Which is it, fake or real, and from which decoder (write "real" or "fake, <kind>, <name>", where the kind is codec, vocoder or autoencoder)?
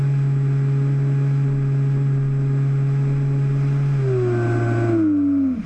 real